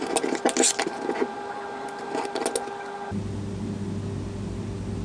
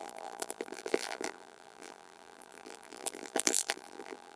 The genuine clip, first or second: first